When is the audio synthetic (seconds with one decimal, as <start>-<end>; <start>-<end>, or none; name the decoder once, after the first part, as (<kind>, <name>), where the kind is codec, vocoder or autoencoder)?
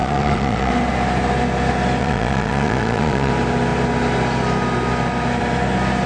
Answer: 0.0-0.7 (vocoder, Vocos); 2.0-3.3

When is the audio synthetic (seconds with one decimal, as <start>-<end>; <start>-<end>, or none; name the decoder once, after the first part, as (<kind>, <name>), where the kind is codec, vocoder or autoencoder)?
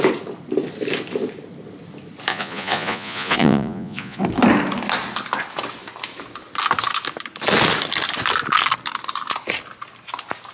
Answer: 2.3-4.2 (vocoder, Vocos)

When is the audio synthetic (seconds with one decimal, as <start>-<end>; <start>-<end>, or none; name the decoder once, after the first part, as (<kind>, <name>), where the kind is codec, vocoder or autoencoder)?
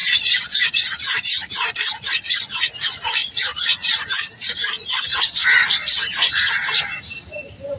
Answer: 0.0-2.1 (vocoder, BigVGAN v2); 3.2-7.0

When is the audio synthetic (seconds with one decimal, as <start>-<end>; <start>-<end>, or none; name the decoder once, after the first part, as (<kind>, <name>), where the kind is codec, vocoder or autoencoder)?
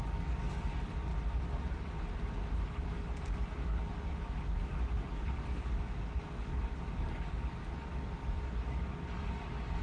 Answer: 0.0-1.1 (codec, DAC); 2.7-9.8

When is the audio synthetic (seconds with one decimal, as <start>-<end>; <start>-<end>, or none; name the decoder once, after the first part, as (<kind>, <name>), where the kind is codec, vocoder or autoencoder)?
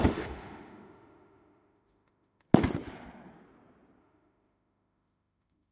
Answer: 0.0-2.5 (autoencoder, DAC-VAE); 4.0-5.7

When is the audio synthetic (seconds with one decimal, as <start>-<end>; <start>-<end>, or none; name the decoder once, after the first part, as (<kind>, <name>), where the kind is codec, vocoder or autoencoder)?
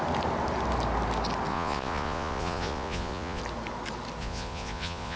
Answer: 1.5-3.4 (vocoder, Vocos); 4.2-5.2